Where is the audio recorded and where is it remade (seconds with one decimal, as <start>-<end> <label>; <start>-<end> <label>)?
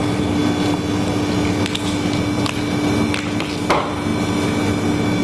0.0-5.2 recorded